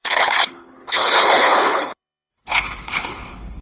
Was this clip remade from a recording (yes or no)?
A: yes